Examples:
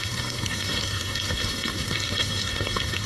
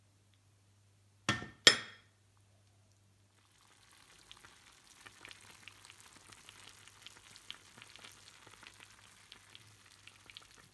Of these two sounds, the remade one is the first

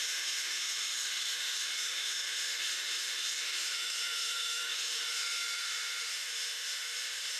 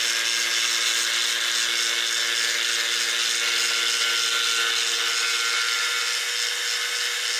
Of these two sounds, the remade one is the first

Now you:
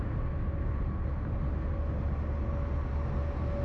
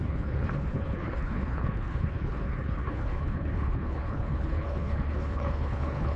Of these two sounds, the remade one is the second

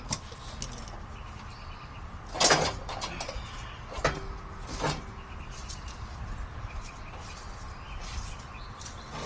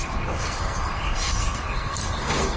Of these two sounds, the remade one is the second